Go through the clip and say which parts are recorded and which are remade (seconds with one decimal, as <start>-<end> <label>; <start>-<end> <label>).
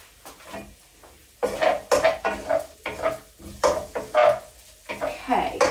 0.0-5.7 recorded